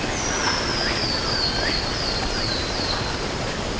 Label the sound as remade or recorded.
recorded